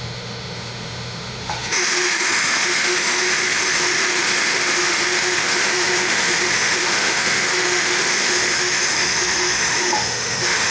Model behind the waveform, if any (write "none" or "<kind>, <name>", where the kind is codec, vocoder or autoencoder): autoencoder, DAC-VAE